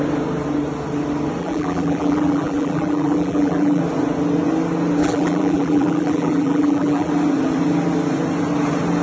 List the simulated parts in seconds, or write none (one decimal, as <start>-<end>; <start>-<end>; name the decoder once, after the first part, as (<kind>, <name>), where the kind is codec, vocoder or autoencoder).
1.4-3.8 (vocoder, BigVGAN v2); 5.0-7.1